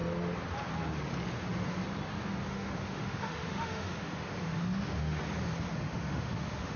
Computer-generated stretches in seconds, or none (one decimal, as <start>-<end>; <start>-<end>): 2.5-5.2; 5.7-6.8